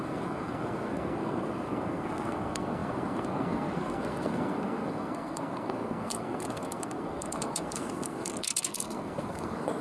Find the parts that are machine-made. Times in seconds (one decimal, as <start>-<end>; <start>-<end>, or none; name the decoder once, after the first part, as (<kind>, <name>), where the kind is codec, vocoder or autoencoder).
0.0-9.8 (codec, SNAC)